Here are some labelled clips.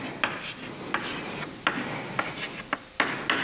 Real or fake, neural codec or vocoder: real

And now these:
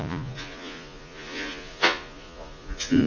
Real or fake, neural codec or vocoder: fake, vocoder, Vocos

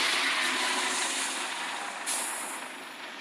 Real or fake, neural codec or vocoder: real